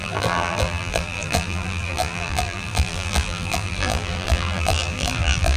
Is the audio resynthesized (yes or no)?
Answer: yes